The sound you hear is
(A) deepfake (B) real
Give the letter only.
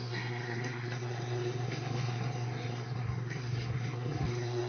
A